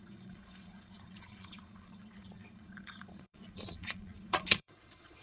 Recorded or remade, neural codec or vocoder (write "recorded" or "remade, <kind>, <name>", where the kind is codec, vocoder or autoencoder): remade, vocoder, Vocos